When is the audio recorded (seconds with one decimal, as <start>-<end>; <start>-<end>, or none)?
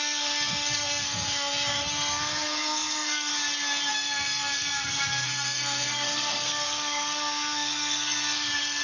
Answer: 3.3-3.9